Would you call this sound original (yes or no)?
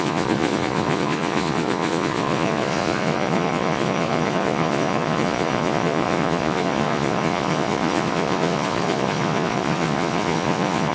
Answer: no